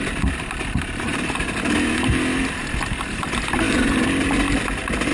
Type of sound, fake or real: real